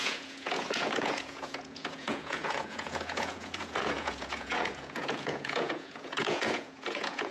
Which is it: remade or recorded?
remade